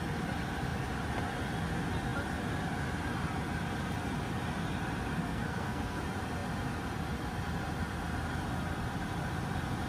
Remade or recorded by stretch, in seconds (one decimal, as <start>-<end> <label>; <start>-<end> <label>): 0.0-5.2 recorded; 5.2-6.0 remade; 6.0-9.9 recorded